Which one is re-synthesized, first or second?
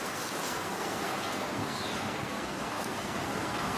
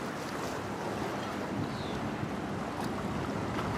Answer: first